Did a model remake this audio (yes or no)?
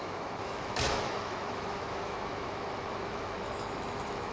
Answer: yes